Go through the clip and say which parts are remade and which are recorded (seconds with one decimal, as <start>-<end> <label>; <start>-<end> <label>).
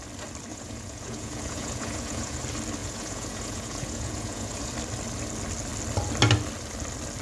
0.0-0.5 recorded; 0.5-2.4 remade; 2.4-2.8 recorded; 2.8-4.7 remade; 4.7-7.2 recorded